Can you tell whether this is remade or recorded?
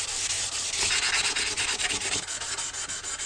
recorded